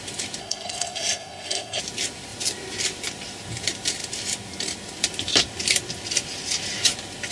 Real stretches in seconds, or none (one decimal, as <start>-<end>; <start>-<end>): 0.0-0.4; 1.8-7.3